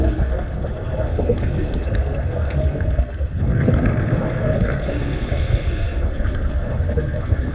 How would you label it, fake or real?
fake